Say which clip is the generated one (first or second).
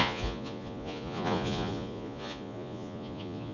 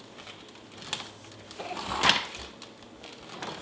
first